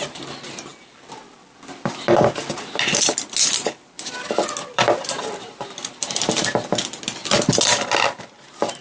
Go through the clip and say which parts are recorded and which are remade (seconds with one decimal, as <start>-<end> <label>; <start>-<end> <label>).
0.0-8.8 recorded